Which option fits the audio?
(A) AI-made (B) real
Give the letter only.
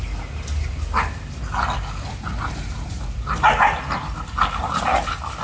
B